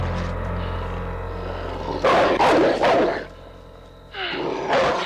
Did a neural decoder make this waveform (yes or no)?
no